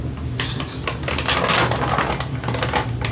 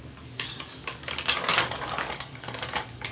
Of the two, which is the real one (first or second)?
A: first